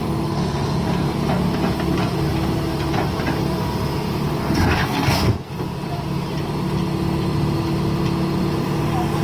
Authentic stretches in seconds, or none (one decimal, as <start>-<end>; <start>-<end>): 0.0-4.4; 5.5-9.2